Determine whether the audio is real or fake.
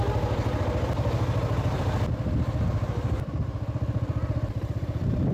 fake